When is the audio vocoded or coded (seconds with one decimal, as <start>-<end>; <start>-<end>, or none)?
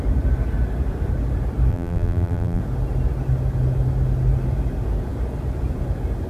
1.7-2.6